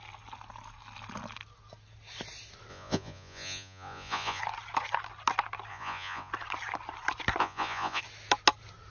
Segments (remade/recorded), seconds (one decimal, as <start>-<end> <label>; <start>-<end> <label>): 0.0-2.7 recorded; 2.7-4.4 remade; 4.4-5.7 recorded; 5.7-6.3 remade; 6.3-7.4 recorded; 7.4-8.0 remade; 8.0-8.9 recorded